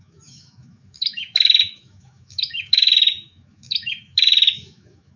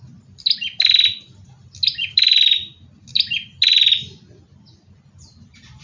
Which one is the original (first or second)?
second